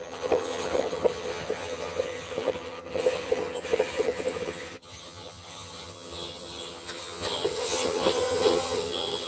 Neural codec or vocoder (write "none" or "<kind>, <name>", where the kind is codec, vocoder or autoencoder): vocoder, HiFi-GAN